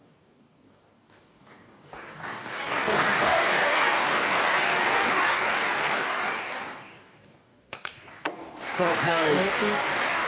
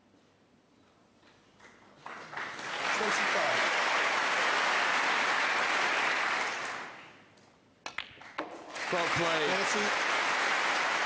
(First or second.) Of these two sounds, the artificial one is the first